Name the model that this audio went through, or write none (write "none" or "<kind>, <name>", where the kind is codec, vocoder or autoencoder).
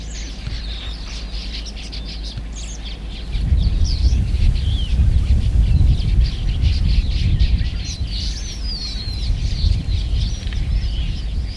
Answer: none